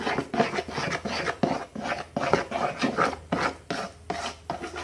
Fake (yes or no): no